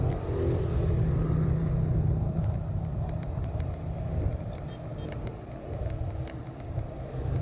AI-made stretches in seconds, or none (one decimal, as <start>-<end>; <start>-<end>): none

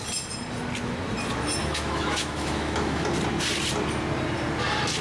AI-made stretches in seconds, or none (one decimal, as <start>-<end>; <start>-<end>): 1.6-3.1

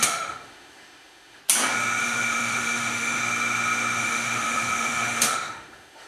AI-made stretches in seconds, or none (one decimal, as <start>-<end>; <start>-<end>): 0.0-1.4; 2.0-3.2; 4.0-6.1

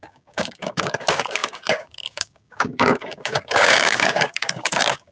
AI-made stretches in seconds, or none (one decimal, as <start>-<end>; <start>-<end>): 0.0-5.1

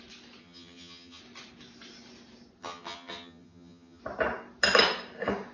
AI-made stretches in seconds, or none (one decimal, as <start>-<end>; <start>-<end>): 0.4-1.2; 2.6-4.0

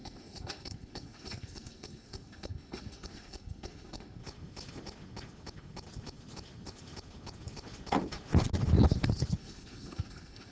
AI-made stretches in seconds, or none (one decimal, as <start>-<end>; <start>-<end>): 0.0-4.2; 9.4-10.5